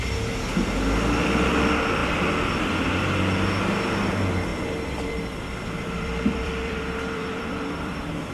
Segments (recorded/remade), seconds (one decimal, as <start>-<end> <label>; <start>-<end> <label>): 0.0-2.0 recorded; 2.0-2.8 remade; 2.8-4.5 recorded; 4.5-8.3 remade